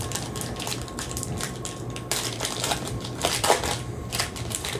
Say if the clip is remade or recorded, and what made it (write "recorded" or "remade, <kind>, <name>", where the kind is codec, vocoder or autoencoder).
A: remade, vocoder, BigVGAN v2